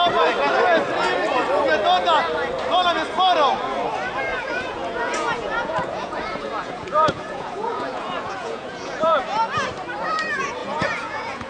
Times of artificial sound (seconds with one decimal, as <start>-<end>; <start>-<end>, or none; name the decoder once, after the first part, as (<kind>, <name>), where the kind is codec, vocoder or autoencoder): 4.3-9.2 (vocoder, Vocos); 10.6-11.5